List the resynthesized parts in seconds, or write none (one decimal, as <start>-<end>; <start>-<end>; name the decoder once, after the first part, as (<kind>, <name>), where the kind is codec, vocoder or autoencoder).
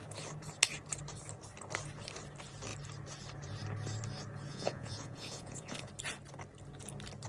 4.5-5.9 (vocoder, Vocos)